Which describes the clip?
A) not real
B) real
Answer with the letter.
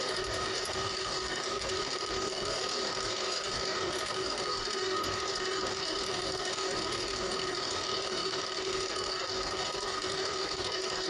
A